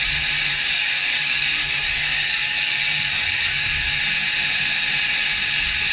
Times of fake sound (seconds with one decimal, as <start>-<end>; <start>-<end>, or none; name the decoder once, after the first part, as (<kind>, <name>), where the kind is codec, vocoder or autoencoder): 0.5-4.0 (codec, DAC)